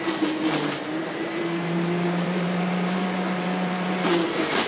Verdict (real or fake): fake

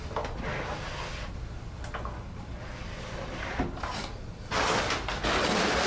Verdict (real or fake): real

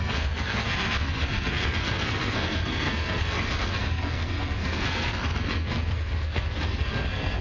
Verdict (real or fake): fake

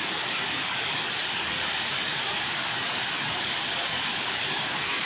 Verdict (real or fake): fake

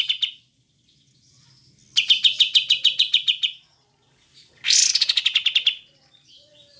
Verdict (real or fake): real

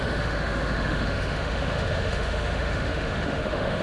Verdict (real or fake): fake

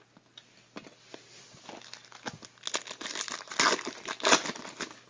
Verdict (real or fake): real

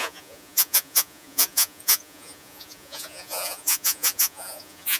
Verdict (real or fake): fake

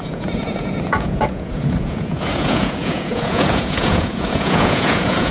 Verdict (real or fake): fake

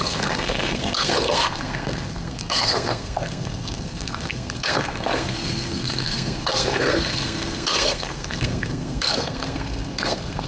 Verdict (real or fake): fake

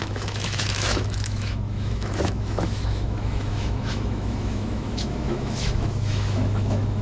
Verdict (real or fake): fake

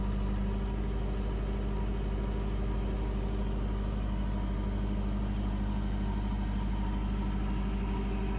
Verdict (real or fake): real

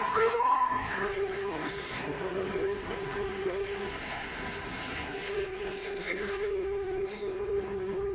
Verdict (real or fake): fake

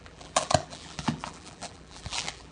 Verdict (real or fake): fake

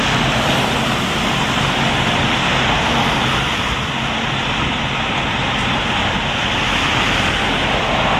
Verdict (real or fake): real